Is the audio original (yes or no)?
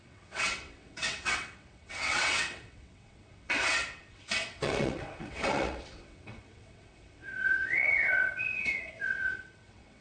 no